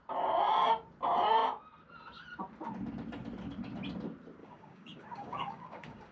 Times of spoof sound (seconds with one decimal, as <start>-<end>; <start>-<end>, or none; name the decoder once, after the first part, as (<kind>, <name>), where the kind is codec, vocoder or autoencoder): 4.4-6.1 (codec, DAC)